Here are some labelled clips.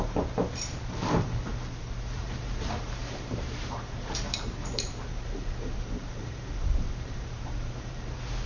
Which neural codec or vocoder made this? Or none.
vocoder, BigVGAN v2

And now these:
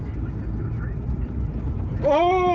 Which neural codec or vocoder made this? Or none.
none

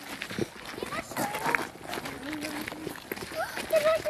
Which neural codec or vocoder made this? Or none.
none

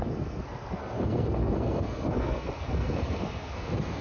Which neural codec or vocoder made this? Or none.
codec, SNAC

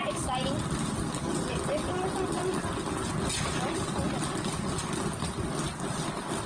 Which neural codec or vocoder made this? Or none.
none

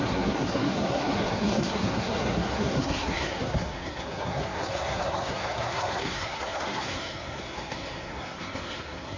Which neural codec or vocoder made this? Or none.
codec, SNAC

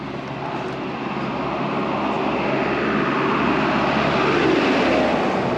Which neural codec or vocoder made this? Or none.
none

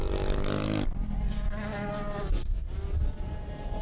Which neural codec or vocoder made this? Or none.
none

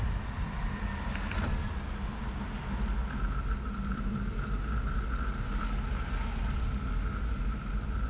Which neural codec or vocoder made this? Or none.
none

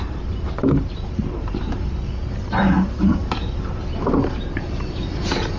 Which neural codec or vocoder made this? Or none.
vocoder, BigVGAN v2